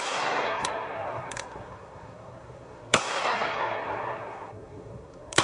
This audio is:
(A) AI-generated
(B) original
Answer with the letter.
A